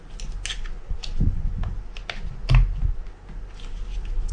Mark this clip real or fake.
real